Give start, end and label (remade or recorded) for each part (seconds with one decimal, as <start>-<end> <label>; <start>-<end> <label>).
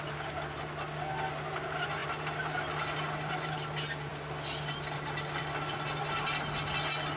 0.0-7.2 recorded